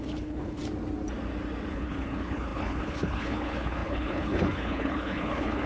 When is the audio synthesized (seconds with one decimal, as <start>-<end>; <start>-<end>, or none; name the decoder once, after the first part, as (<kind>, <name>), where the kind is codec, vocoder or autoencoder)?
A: 0.0-0.6 (codec, HILCodec); 1.7-5.7